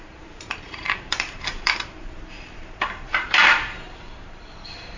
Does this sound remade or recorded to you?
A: remade